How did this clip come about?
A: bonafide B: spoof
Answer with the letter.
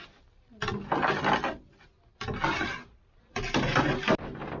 A